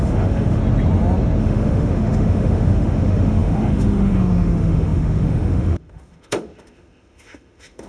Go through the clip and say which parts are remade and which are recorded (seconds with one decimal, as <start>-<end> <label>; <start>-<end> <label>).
0.0-0.6 remade; 0.6-1.4 recorded; 1.4-7.9 remade